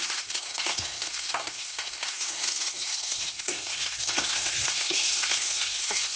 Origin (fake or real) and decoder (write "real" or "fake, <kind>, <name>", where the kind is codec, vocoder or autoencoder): fake, codec, SNAC